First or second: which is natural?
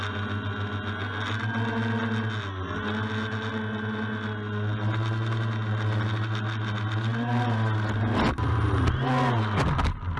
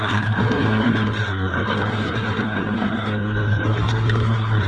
first